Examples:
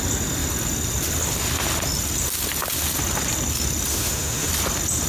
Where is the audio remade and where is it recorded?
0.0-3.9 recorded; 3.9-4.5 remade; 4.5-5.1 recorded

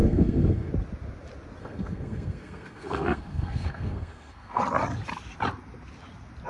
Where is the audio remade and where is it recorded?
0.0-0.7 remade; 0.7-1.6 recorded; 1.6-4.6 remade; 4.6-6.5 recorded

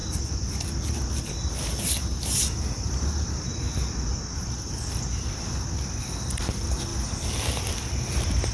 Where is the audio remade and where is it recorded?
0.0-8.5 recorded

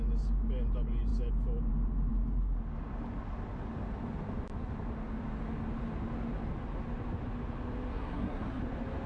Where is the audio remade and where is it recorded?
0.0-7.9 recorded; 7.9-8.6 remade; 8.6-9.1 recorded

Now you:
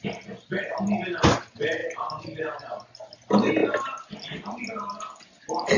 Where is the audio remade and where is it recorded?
0.0-5.8 recorded